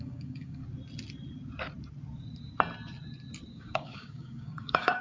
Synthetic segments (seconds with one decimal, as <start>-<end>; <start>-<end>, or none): 0.0-0.6; 3.5-5.0